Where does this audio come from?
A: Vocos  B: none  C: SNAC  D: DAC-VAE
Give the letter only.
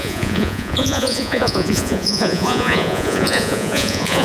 A